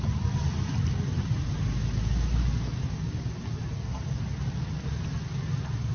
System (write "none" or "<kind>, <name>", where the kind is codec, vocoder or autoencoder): none